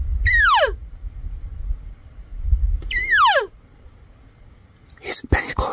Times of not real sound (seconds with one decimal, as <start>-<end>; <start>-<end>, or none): none